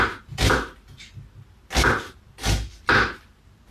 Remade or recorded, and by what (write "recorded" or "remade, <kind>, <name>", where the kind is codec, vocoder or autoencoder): recorded